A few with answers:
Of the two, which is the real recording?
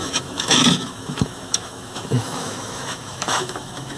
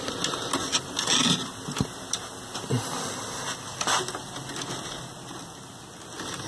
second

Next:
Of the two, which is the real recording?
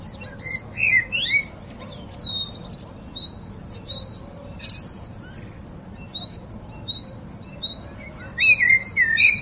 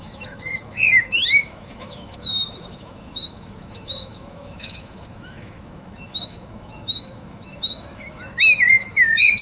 first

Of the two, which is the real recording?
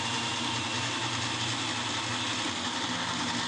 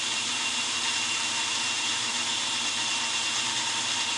first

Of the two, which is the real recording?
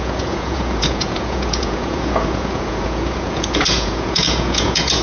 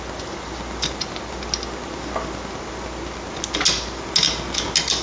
second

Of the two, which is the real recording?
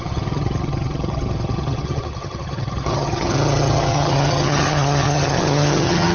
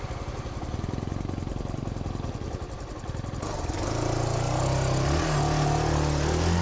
second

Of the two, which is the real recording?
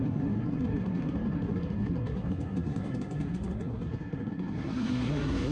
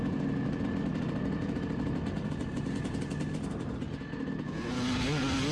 second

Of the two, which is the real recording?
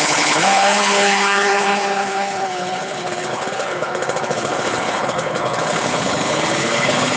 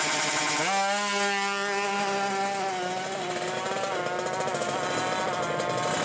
second